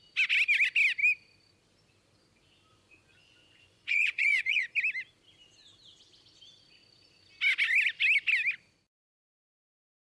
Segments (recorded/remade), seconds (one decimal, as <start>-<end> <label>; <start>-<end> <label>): 0.0-2.7 recorded; 2.7-4.6 remade; 4.6-10.1 recorded